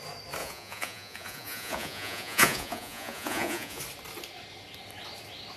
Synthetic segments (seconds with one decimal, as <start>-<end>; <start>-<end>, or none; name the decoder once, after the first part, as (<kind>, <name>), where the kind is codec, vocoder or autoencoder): 0.4-3.8 (vocoder, Vocos)